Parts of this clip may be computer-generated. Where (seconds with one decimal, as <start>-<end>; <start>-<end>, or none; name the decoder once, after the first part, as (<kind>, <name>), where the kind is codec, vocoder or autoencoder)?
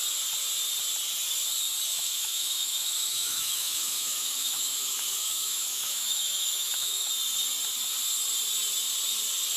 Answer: 1.9-7.1 (autoencoder, DAC-VAE)